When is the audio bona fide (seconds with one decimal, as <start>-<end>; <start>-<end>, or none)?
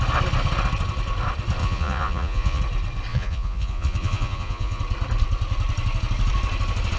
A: 0.0-1.6; 2.6-3.1; 4.8-7.0